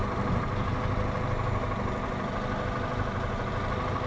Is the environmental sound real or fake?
real